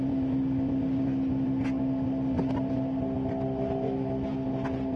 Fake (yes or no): no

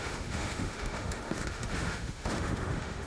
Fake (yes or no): yes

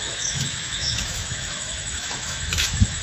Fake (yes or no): yes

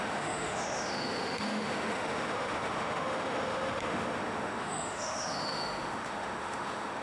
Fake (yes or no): yes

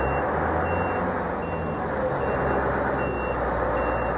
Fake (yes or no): no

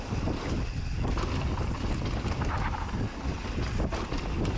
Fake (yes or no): no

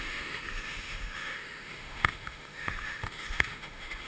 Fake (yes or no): yes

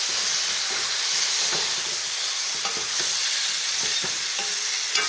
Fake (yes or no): no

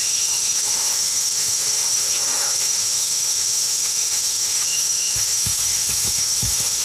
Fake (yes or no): yes